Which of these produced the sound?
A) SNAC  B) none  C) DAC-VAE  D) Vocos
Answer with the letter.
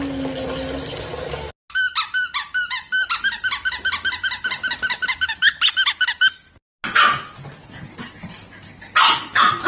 B